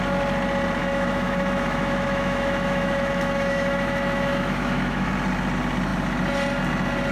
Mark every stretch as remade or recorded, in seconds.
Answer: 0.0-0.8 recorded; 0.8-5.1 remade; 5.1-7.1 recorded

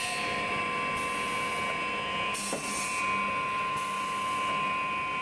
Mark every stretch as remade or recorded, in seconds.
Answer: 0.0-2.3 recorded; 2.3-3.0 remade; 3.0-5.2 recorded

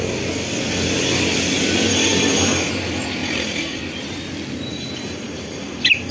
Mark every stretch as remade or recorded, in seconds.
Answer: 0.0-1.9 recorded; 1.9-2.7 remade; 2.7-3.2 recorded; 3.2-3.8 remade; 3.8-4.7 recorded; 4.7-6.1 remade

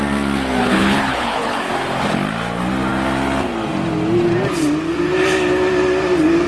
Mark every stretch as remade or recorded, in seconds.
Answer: 0.0-0.6 recorded; 0.6-1.7 remade; 1.7-6.5 recorded

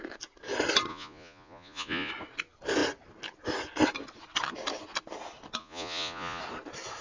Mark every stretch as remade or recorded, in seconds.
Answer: 0.0-0.9 recorded; 0.9-2.1 remade; 2.1-5.6 recorded; 5.6-6.4 remade; 6.4-7.0 recorded

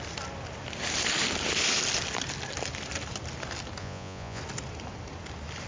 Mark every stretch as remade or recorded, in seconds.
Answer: 0.0-3.8 recorded; 3.8-4.4 remade; 4.4-5.7 recorded

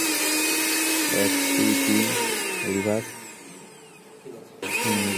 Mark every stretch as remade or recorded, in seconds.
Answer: 0.0-5.2 recorded

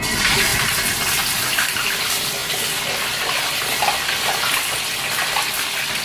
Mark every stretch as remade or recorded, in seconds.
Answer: 0.0-0.5 recorded; 0.5-2.0 remade; 2.0-3.8 recorded; 3.8-5.5 remade; 5.5-6.0 recorded